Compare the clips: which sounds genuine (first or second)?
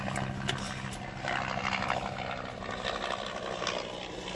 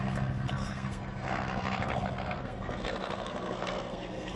first